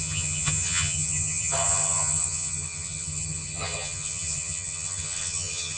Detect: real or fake fake